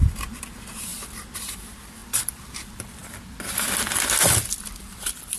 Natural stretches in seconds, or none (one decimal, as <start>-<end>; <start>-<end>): 3.0-4.8

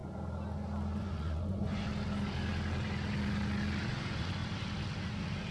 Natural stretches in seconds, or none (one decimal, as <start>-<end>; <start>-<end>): 0.0-1.0; 1.9-3.9; 4.4-5.5

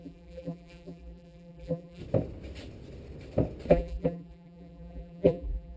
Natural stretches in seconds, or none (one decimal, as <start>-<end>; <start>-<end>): 2.0-3.7

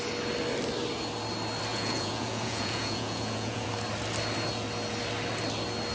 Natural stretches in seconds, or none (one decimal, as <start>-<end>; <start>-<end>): 0.0-1.7; 3.7-5.9

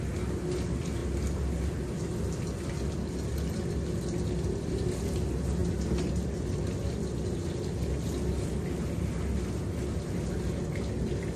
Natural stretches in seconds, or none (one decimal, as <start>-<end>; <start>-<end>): 0.0-11.4

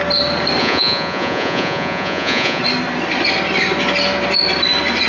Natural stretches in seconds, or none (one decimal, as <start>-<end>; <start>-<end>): 0.0-0.6; 2.6-5.1

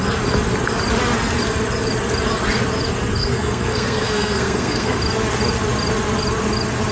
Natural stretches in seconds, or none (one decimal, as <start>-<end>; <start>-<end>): 0.0-3.2; 5.0-6.9